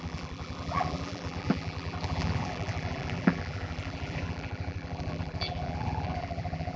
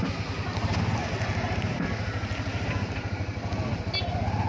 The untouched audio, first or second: second